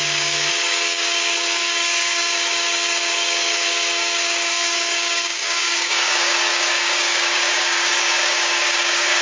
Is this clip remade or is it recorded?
remade